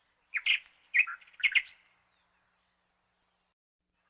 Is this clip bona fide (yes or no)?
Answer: yes